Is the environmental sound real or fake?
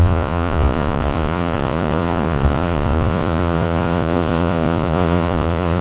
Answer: fake